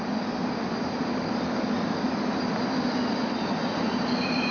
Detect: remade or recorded recorded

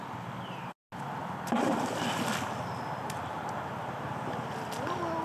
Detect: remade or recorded recorded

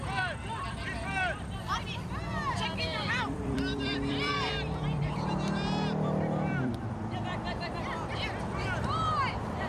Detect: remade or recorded remade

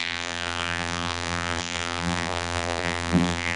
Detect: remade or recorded remade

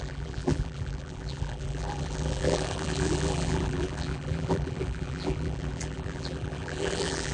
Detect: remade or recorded remade